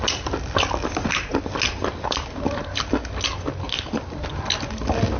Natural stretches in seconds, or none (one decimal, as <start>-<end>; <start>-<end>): 0.0-5.2